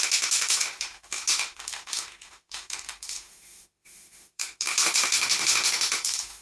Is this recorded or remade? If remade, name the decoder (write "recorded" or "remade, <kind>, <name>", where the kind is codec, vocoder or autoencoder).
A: remade, autoencoder, DAC-VAE